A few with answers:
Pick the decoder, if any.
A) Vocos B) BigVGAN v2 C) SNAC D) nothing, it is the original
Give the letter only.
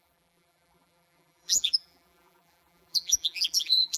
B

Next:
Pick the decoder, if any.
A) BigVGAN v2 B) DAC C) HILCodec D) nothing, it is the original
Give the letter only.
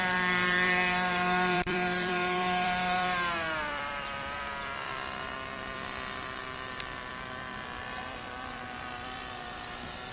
A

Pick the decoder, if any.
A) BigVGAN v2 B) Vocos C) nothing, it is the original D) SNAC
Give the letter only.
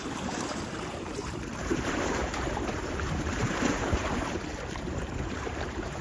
A